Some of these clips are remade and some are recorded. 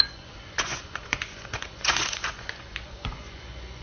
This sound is remade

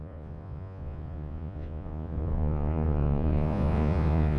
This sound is remade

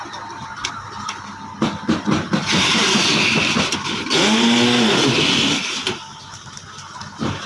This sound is recorded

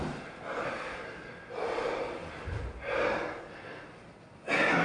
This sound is recorded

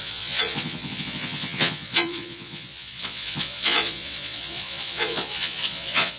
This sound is remade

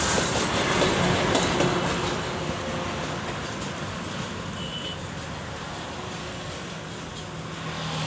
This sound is recorded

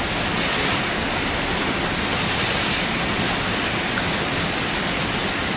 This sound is recorded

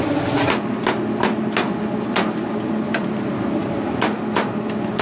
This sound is recorded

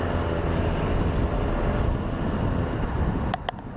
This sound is recorded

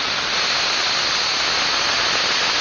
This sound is recorded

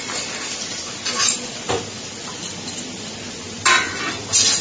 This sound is recorded